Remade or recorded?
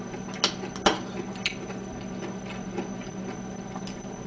recorded